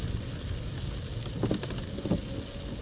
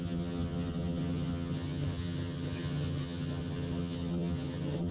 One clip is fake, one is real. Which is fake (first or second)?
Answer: second